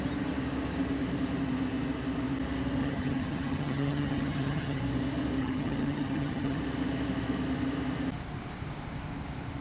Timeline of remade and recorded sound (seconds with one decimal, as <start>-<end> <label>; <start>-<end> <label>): 0.0-2.8 recorded; 2.8-4.8 remade; 4.8-5.4 recorded; 5.4-6.6 remade; 6.6-9.6 recorded